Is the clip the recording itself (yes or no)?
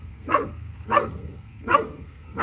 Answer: no